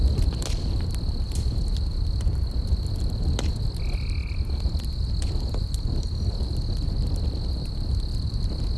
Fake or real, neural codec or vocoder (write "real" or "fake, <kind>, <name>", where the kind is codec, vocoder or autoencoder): real